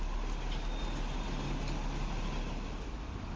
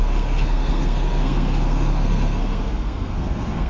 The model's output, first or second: second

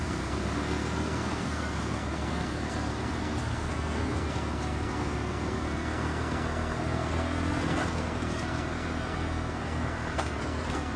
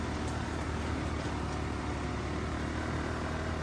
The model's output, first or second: first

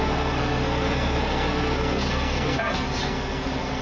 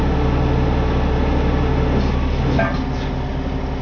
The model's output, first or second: first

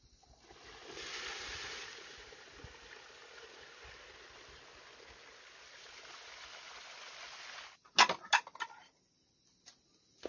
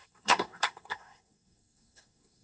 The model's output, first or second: second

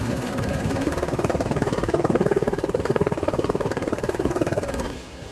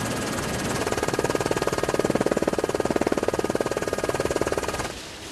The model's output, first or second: first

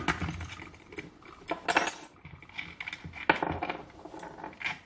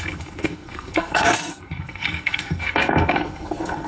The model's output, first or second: second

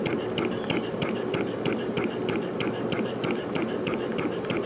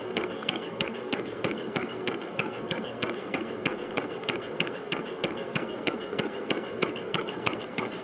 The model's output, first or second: second